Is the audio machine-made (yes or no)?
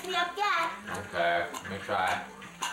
yes